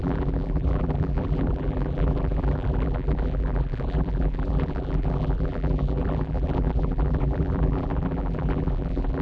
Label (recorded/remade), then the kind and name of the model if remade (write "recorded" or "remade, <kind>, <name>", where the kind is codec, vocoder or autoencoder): remade, vocoder, BigVGAN v2